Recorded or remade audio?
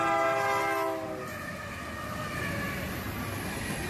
recorded